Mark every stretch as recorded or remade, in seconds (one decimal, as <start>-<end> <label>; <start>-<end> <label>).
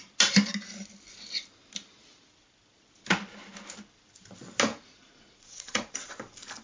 0.0-4.7 recorded; 4.7-6.1 remade; 6.1-6.6 recorded